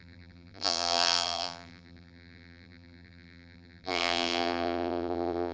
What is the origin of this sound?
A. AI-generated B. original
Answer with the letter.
A